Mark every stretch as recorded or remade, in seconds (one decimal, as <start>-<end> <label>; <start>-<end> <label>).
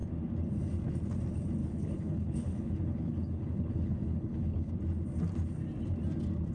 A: 0.0-1.6 recorded; 1.6-4.7 remade; 4.7-6.5 recorded